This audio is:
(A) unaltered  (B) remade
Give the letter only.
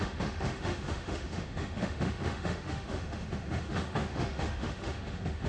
B